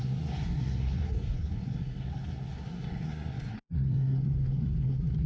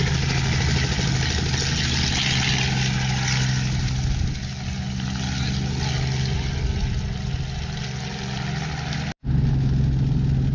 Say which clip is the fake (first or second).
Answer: first